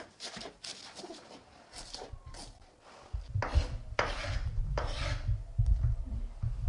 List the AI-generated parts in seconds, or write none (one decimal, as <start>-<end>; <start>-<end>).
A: 0.0-0.7; 4.6-5.0; 6.1-6.7